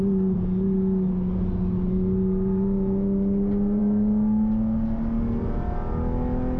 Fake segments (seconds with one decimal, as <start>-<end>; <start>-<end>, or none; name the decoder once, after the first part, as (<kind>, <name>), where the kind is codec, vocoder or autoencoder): none

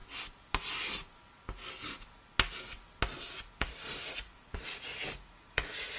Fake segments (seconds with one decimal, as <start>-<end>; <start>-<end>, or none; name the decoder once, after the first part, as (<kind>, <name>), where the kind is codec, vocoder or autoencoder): 3.6-6.0 (vocoder, Vocos)

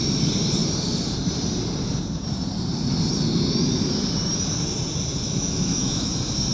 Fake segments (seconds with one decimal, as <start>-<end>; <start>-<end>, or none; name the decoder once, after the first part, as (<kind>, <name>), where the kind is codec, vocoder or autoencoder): 5.2-6.1 (autoencoder, DAC-VAE)

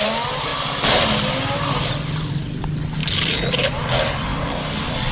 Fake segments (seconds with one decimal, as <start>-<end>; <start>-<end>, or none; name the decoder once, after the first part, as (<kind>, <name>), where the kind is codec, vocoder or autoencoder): none

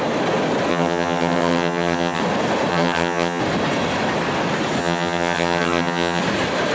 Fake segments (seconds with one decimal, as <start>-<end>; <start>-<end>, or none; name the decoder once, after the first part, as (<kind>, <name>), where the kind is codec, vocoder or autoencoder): 0.7-2.2 (vocoder, HiFi-GAN); 2.7-3.4; 4.8-6.2

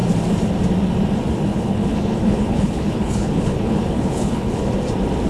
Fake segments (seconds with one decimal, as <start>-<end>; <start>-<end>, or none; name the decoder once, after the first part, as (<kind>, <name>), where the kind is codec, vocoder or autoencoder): 1.5-4.7 (codec, HILCodec)

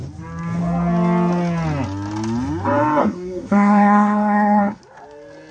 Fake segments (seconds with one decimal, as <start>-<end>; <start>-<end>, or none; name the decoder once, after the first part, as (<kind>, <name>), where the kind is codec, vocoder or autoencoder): 3.0-4.8 (codec, SNAC)

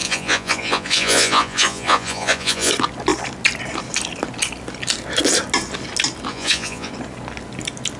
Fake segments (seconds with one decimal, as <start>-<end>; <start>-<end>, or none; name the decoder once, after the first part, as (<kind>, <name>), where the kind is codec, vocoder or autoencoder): 0.0-2.7 (vocoder, Vocos); 6.3-6.9